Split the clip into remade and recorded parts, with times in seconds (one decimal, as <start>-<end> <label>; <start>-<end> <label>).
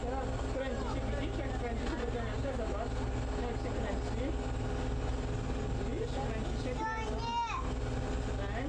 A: 0.0-8.7 recorded